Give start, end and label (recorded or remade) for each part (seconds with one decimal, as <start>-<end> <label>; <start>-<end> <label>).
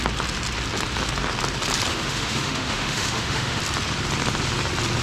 0.0-1.9 recorded; 1.9-3.6 remade; 3.6-5.0 recorded